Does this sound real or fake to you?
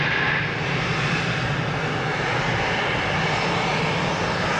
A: real